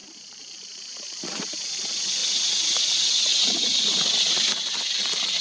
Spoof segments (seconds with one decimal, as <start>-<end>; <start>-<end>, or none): 0.0-1.6